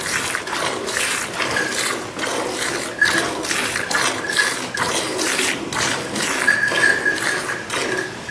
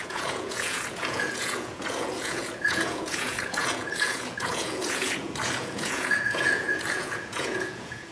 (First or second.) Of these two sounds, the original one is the first